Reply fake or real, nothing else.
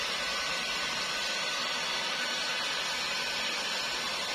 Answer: real